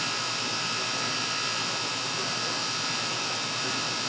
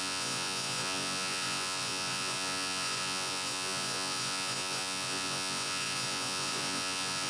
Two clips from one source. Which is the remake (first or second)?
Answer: second